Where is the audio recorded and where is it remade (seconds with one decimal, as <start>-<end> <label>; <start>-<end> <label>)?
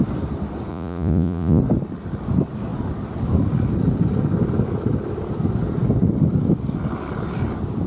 0.0-0.7 recorded; 0.7-1.6 remade; 1.6-7.9 recorded